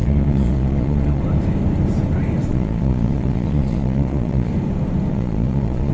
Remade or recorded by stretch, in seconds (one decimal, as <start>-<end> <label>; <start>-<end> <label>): 0.0-1.2 remade; 1.2-2.5 recorded; 2.5-4.5 remade; 4.5-5.1 recorded; 5.1-5.9 remade